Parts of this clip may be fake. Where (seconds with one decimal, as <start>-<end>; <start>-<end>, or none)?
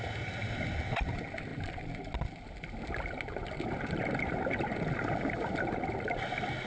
none